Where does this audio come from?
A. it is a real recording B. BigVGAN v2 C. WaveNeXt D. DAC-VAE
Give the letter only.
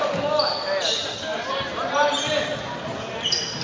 A